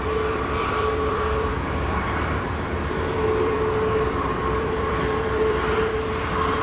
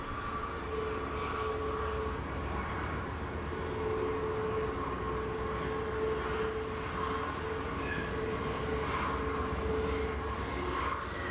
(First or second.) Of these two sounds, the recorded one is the second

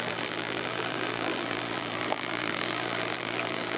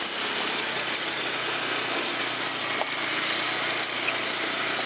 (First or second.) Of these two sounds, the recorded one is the second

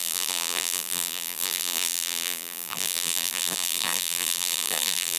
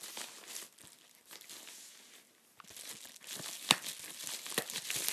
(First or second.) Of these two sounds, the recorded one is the second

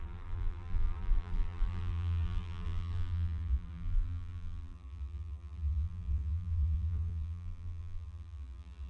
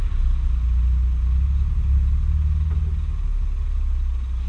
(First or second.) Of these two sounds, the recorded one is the second